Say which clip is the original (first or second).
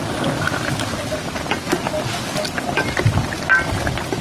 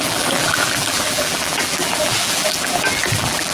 first